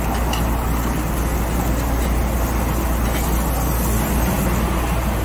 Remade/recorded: recorded